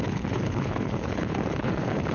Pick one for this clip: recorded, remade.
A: remade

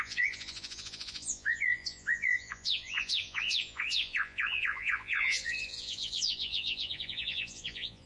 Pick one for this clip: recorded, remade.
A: remade